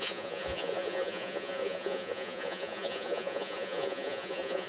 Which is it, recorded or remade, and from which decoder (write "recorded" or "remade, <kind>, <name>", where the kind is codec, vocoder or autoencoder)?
remade, vocoder, Vocos